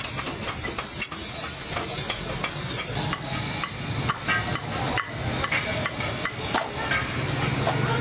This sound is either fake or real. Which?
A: real